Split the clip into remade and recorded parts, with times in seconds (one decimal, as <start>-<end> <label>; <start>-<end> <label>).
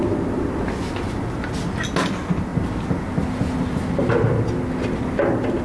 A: 0.0-5.6 recorded